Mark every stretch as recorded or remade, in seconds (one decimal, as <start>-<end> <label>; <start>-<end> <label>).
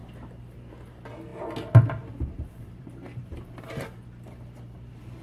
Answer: 0.0-5.2 recorded